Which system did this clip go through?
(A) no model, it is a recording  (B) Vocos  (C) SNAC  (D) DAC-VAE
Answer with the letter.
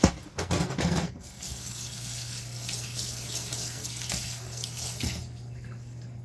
C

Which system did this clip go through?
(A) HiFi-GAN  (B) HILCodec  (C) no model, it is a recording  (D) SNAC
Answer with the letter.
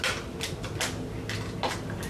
C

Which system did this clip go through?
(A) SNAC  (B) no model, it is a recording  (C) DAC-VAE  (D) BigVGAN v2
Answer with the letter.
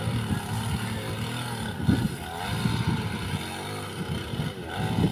B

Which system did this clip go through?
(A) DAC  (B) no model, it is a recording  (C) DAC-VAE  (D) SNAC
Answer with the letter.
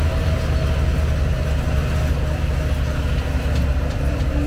B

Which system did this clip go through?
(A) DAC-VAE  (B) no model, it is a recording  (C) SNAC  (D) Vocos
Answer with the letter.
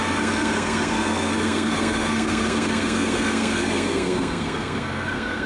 C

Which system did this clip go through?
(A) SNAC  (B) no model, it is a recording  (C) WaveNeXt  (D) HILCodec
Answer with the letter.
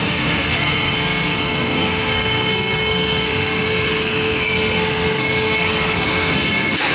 A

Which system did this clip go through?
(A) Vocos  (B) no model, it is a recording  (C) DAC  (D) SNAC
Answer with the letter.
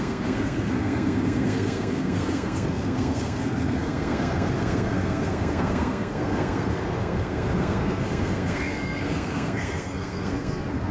D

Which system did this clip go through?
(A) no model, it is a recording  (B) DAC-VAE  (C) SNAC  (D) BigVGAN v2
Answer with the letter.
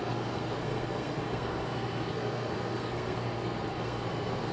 C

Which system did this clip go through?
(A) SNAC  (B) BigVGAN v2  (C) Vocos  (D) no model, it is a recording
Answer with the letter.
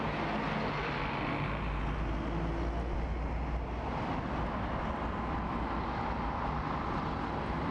D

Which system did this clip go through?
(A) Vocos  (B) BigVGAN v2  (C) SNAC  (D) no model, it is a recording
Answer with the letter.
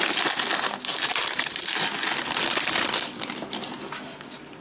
D